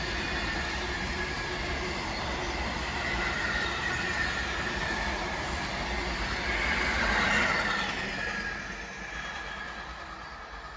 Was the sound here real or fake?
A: real